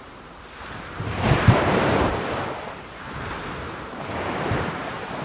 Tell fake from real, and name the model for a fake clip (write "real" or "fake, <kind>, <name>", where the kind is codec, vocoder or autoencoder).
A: fake, vocoder, BigVGAN v2